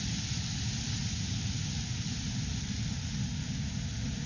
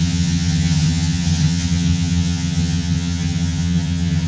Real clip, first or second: first